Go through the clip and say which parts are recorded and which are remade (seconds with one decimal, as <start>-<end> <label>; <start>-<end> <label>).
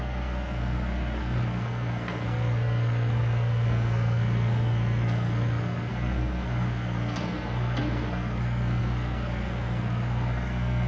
0.0-10.9 remade